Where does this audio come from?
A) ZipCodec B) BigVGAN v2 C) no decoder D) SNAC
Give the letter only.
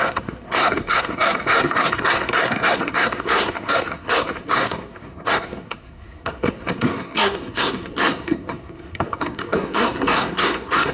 D